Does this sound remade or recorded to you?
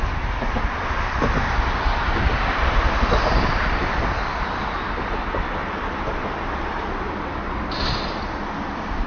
recorded